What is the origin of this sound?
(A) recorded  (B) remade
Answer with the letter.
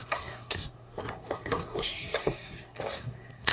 B